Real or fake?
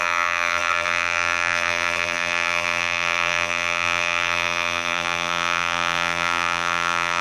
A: fake